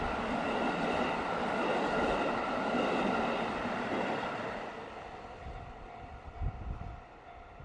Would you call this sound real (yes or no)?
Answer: yes